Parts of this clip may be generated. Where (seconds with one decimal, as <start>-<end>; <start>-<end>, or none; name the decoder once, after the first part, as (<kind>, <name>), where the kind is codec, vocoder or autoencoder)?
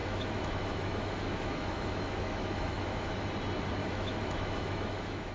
0.0-3.1 (autoencoder, DAC-VAE); 3.8-5.3